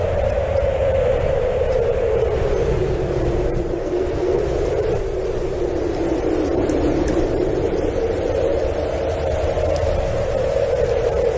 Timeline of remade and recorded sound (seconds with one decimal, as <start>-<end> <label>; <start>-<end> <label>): 0.0-3.8 recorded; 3.8-4.4 remade; 4.4-11.4 recorded